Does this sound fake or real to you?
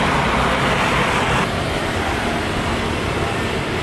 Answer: fake